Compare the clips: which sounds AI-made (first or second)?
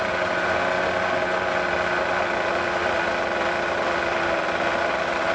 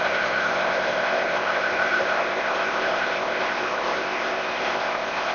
second